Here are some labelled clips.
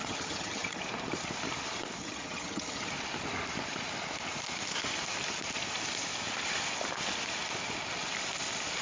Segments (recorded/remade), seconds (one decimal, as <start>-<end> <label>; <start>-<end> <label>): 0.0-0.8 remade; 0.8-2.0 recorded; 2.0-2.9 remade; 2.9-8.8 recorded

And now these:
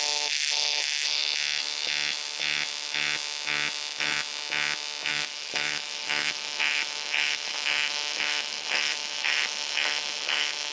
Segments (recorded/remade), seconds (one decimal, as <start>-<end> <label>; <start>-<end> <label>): 0.0-1.2 remade; 1.2-5.1 recorded; 5.1-10.7 remade

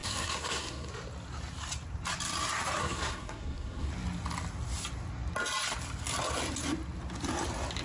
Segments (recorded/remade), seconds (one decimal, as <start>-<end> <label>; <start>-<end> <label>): 0.0-0.9 remade; 0.9-2.8 recorded; 2.8-3.9 remade; 3.9-7.8 recorded